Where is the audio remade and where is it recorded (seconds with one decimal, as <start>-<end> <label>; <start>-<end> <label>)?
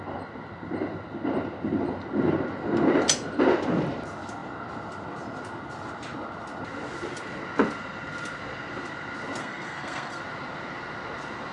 0.0-9.4 recorded; 9.4-10.2 remade; 10.2-11.5 recorded